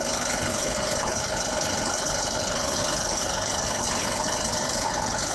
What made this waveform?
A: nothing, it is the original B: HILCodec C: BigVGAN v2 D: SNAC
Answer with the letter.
B